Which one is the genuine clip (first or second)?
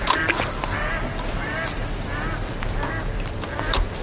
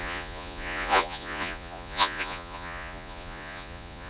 first